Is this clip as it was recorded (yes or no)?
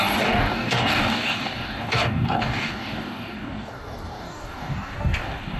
no